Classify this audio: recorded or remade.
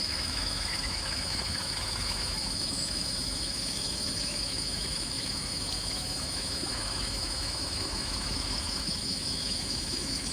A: remade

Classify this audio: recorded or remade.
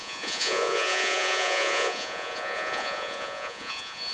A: remade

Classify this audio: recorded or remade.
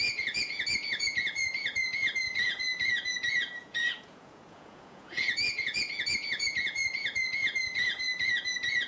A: remade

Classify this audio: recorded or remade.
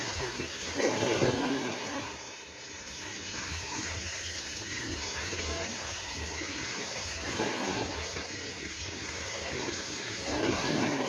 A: remade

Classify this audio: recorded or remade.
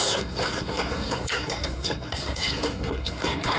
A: remade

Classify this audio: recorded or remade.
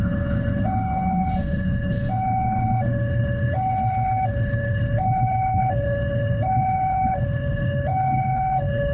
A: remade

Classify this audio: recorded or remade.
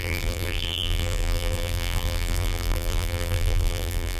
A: remade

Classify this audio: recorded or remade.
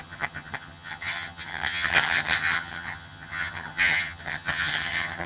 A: remade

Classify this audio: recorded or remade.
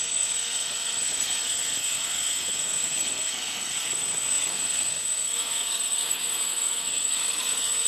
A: remade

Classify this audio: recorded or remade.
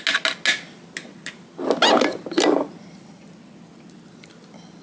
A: recorded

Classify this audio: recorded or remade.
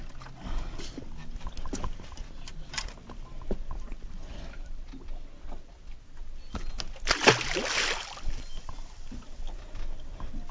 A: recorded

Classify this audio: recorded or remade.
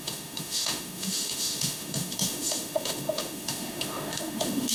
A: remade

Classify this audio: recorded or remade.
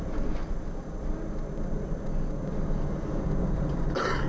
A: recorded